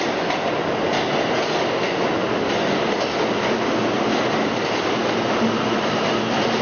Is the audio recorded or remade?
recorded